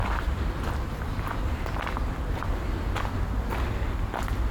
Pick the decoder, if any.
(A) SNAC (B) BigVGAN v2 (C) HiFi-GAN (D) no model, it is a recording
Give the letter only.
D